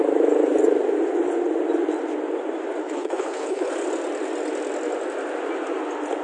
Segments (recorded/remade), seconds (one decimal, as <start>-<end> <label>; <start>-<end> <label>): 0.0-2.8 recorded; 2.8-3.7 remade; 3.7-6.2 recorded